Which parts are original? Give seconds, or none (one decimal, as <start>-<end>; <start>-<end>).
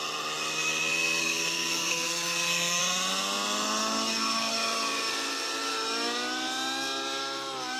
0.0-1.2; 2.8-7.8